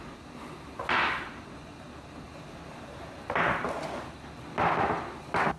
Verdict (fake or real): real